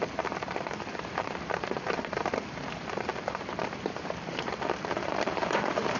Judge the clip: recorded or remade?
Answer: remade